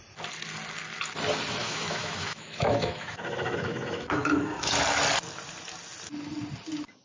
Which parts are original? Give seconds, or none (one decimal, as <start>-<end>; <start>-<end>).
0.0-1.6; 4.7-7.0